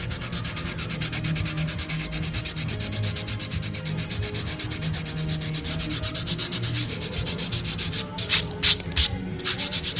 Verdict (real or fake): real